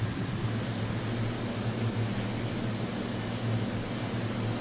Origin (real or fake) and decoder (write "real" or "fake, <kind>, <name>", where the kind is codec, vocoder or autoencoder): real